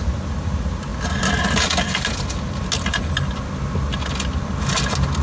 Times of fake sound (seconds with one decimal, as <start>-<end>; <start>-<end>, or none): none